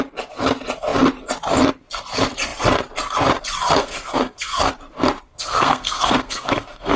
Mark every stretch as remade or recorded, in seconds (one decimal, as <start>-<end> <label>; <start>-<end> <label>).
0.0-3.8 recorded; 3.8-4.7 remade; 4.7-5.3 recorded; 5.3-7.0 remade